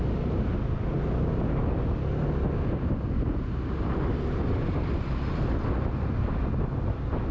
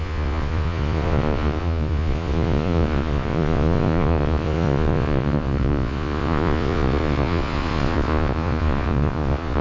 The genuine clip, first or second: first